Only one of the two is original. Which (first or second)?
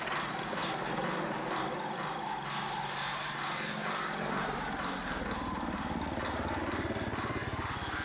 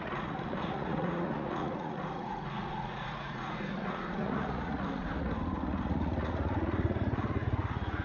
first